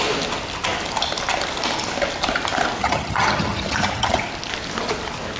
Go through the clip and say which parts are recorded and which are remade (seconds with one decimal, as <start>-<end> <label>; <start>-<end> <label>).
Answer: 0.0-2.8 recorded; 2.8-4.2 remade; 4.2-5.4 recorded